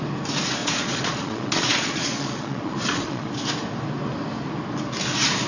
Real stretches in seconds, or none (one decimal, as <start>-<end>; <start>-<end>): 0.0-0.6; 3.3-5.5